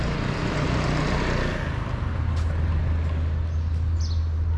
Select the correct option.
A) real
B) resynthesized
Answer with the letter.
A